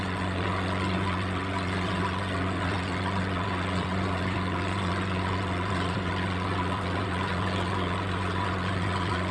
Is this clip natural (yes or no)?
no